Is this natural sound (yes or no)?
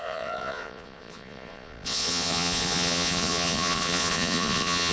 no